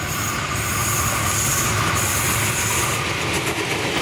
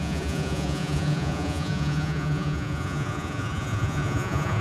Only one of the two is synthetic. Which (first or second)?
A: second